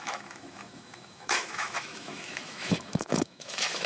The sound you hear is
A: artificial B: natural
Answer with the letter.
A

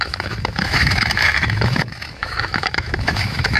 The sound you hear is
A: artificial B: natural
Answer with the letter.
A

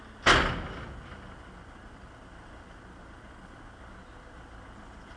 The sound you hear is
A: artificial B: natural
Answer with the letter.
B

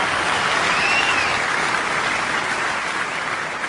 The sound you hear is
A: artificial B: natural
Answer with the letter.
B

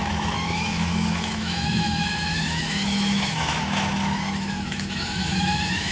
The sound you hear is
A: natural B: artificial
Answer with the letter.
B